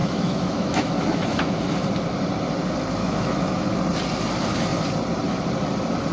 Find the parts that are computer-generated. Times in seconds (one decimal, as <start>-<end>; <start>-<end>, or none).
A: 0.0-1.6; 3.0-3.8